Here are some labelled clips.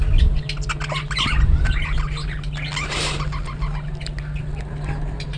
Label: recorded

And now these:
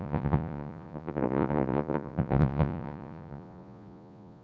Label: remade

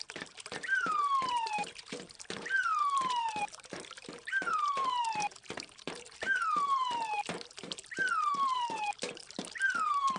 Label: remade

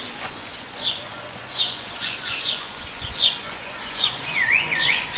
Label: remade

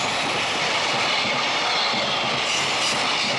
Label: recorded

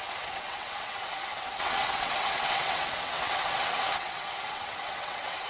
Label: remade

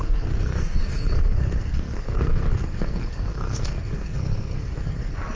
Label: remade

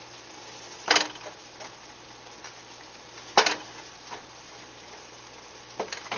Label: recorded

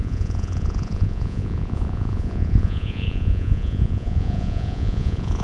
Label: remade